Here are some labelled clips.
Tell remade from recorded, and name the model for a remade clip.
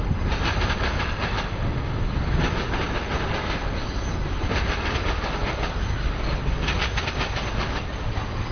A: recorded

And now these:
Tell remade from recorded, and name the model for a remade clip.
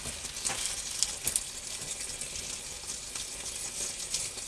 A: recorded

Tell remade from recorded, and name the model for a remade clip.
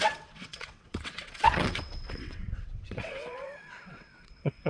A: remade, vocoder, WaveNeXt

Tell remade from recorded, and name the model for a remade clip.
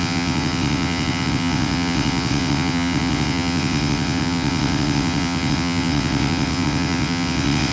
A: remade, vocoder, WaveNeXt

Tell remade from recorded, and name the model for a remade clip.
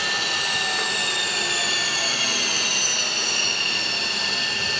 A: recorded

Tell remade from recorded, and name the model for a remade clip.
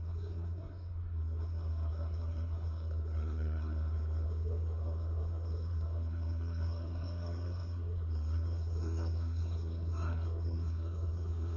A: remade, codec, SNAC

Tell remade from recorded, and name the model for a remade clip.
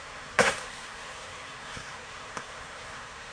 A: remade, codec, SNAC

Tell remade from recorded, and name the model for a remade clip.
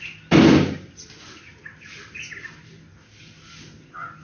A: recorded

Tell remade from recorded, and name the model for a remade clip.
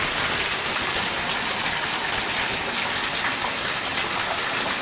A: recorded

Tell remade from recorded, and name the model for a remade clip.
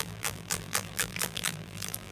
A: remade, vocoder, BigVGAN v2